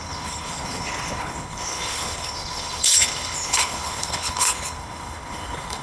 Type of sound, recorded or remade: remade